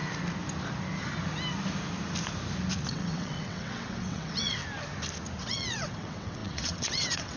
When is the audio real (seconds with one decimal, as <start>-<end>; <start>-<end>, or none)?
0.0-2.9; 4.6-5.4